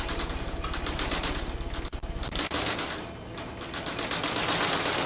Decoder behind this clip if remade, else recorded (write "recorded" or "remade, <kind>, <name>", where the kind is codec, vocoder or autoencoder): recorded